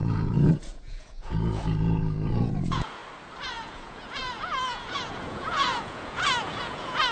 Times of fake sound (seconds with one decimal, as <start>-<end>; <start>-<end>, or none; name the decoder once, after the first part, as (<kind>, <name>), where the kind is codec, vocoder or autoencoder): 0.0-3.0 (vocoder, Vocos); 3.6-7.1